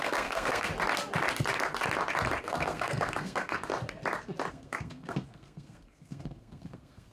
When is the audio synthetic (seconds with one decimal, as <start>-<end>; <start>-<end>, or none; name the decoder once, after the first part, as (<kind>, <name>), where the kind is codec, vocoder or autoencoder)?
0.0-0.7 (codec, SNAC); 2.4-3.7; 4.5-7.1